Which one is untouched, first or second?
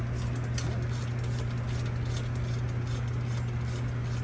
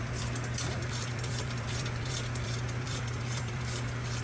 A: first